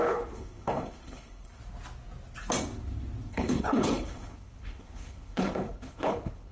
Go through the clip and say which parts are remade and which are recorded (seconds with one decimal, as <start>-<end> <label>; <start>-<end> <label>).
0.0-1.6 remade; 1.6-3.3 recorded; 3.3-6.5 remade